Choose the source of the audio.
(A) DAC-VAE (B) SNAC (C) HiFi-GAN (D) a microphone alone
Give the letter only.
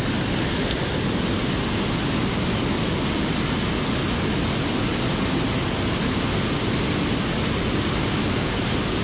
D